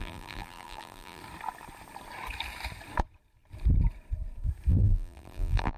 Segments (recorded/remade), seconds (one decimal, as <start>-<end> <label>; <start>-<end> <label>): 0.0-1.2 remade; 1.2-4.7 recorded; 4.7-5.8 remade